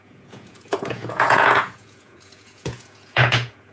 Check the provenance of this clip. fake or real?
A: fake